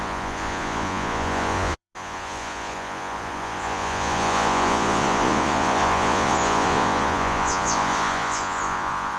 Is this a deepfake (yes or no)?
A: yes